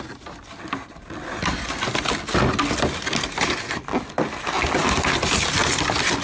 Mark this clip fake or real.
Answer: real